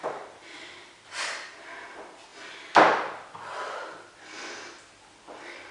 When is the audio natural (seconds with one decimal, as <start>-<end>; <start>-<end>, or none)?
0.0-5.7